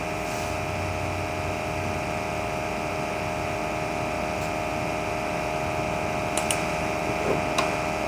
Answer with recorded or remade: recorded